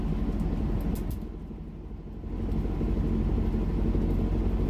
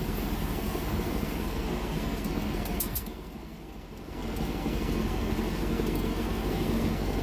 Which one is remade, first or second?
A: second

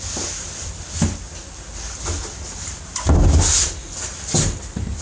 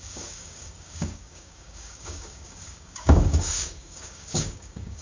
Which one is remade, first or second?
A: second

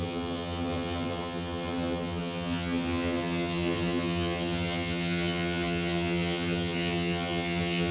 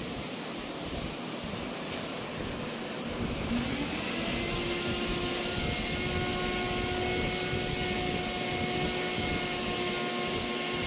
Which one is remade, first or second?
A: first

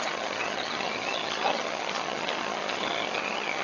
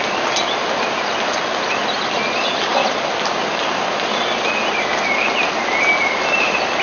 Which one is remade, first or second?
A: first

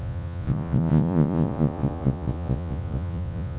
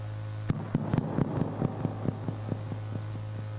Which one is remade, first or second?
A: first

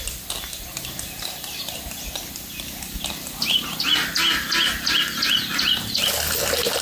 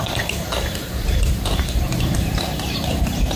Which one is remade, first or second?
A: second